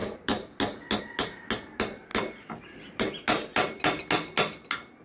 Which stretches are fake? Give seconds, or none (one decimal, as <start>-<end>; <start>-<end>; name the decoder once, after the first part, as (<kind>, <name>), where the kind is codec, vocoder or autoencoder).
none